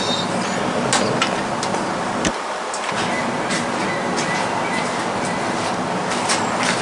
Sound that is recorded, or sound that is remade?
recorded